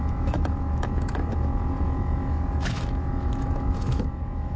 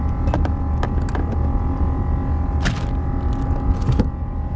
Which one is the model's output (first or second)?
first